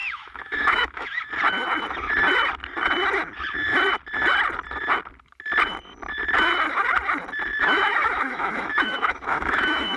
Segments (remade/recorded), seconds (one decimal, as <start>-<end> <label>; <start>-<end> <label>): 0.0-1.3 remade; 1.3-7.6 recorded; 7.6-10.0 remade